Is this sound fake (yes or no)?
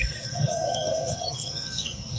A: yes